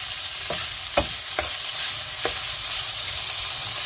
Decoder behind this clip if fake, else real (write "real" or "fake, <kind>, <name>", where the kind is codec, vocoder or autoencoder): real